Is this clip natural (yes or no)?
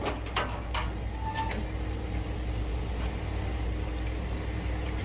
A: yes